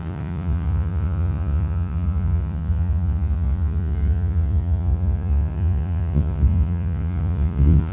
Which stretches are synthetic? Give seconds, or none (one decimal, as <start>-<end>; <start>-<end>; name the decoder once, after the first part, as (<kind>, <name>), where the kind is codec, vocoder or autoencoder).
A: 0.0-7.9 (vocoder, Vocos)